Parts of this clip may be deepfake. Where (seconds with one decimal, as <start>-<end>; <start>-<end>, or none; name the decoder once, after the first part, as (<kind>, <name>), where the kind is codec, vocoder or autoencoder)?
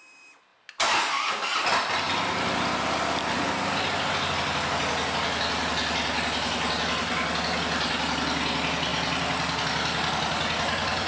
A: none